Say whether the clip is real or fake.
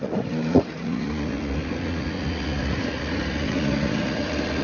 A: fake